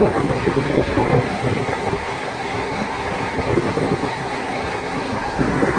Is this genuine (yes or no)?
no